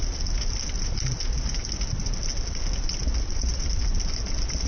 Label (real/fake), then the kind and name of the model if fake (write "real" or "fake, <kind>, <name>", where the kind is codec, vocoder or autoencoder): real